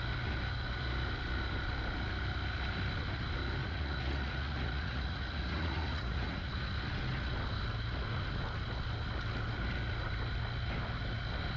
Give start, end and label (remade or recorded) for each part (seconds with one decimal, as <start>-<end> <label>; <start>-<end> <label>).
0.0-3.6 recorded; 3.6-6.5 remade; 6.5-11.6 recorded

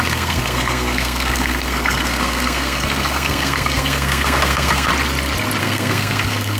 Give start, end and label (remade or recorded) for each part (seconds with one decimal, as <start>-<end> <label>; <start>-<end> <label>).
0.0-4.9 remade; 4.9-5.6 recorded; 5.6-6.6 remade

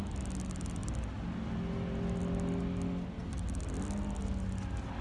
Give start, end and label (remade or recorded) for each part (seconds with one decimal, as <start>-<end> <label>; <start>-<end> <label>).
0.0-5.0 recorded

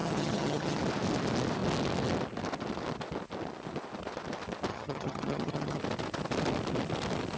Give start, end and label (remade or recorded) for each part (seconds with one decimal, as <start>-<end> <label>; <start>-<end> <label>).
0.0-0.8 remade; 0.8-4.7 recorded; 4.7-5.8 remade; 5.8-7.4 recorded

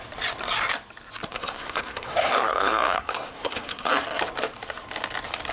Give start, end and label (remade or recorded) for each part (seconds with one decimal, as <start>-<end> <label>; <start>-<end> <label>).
0.0-1.3 recorded; 1.3-3.9 remade; 3.9-5.5 recorded

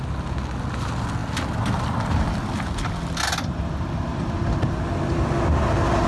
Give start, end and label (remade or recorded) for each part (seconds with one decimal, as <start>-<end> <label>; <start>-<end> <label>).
0.0-6.1 recorded